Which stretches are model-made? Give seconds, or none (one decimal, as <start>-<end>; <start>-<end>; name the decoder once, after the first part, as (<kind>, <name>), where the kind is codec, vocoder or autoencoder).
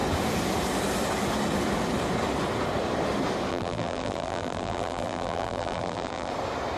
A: 3.5-6.3 (vocoder, BigVGAN v2)